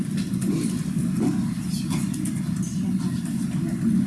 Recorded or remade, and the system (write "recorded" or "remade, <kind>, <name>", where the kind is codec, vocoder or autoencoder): recorded